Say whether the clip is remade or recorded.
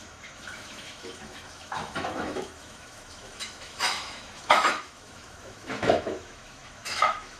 remade